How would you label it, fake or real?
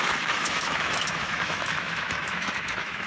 fake